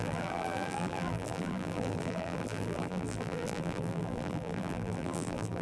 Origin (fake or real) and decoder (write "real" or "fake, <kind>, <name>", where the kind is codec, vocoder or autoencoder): fake, vocoder, BigVGAN v2